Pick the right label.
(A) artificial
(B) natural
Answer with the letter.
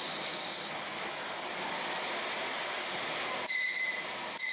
A